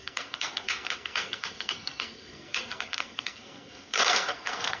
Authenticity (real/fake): fake